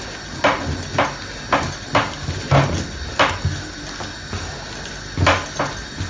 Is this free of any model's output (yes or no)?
yes